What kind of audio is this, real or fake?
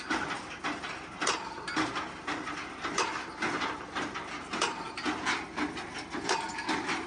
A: real